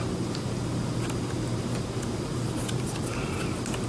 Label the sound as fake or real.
real